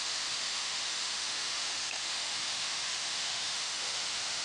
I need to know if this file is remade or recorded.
remade